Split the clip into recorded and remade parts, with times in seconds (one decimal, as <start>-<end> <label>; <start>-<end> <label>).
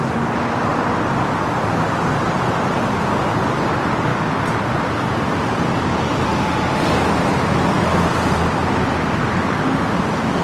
0.0-10.4 recorded